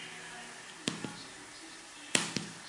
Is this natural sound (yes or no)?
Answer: yes